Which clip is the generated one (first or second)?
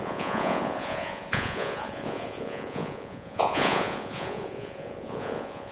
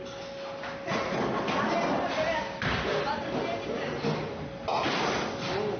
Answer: first